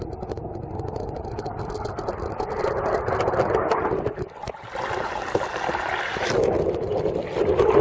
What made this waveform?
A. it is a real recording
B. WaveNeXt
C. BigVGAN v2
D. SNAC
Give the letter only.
A